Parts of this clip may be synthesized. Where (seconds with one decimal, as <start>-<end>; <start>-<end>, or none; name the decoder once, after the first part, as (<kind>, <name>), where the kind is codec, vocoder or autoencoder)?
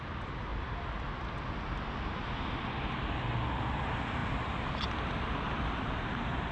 none